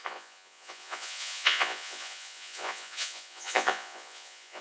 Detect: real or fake fake